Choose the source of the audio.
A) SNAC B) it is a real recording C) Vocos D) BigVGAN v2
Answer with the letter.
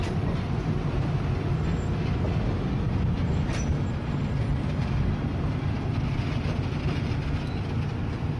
D